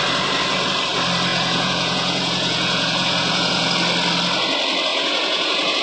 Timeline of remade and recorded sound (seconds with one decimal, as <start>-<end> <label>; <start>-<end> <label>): 0.0-1.3 recorded; 1.3-3.7 remade; 3.7-4.9 recorded; 4.9-5.8 remade